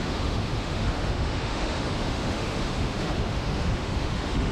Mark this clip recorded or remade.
remade